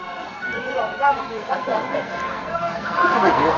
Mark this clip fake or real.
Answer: fake